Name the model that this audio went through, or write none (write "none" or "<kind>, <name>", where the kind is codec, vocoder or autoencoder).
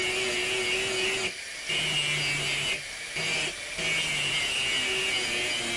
none